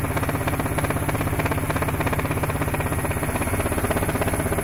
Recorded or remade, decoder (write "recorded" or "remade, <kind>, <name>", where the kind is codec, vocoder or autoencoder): recorded